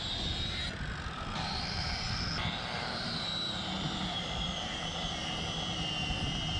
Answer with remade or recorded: remade